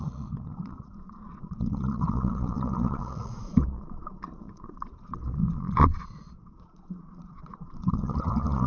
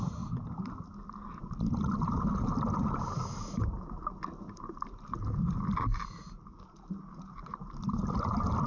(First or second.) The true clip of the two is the second